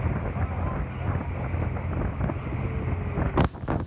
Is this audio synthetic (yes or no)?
no